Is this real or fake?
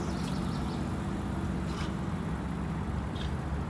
real